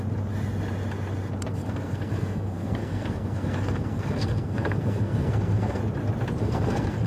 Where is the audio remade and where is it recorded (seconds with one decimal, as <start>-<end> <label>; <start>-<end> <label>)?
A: 0.0-1.5 recorded; 1.5-5.8 remade; 5.8-6.4 recorded; 6.4-7.1 remade